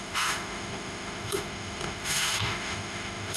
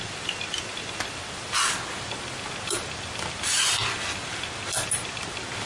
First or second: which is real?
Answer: second